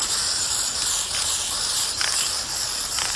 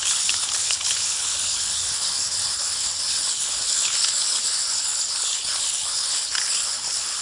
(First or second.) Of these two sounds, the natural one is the first